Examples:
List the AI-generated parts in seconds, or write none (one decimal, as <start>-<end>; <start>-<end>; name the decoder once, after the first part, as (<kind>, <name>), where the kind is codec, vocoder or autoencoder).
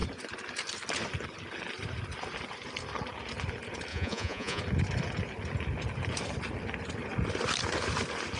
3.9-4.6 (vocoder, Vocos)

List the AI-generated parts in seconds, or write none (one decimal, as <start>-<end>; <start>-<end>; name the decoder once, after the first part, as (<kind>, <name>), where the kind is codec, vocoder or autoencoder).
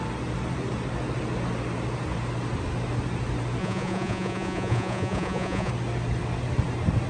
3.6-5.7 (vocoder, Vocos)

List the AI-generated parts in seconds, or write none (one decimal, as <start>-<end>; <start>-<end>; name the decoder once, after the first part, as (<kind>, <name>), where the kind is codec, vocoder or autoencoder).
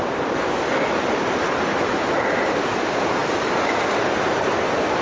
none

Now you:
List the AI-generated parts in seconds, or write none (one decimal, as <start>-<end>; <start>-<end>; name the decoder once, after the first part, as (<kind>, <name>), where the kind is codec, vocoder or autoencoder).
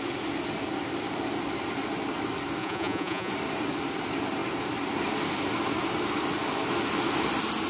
2.6-3.3 (vocoder, Vocos)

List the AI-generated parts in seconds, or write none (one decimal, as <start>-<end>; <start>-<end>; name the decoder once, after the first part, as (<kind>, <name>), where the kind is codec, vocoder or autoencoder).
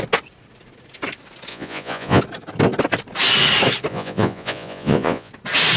1.5-2.2 (vocoder, Vocos); 3.9-5.3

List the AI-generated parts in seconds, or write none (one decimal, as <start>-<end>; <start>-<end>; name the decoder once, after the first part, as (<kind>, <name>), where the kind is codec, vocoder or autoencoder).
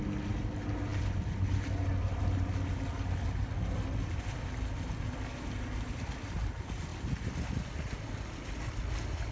none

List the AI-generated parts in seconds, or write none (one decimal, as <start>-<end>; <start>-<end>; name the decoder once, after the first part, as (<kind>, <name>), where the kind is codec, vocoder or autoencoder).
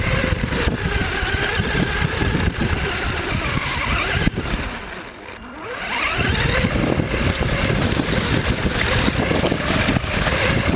none